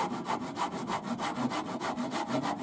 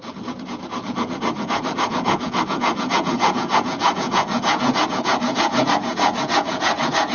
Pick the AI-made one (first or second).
second